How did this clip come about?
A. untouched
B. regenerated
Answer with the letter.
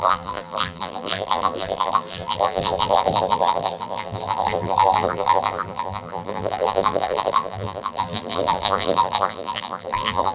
B